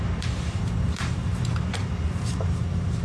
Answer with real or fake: fake